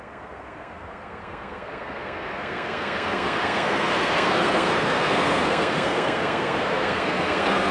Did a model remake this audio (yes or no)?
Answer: yes